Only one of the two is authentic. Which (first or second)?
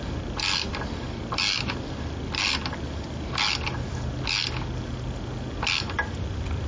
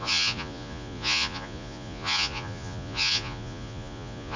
first